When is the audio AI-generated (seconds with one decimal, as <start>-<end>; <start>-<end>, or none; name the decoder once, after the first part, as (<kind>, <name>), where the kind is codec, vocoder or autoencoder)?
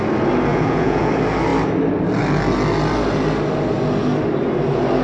0.5-1.1 (vocoder, Vocos)